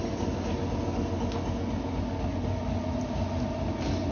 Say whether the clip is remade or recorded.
recorded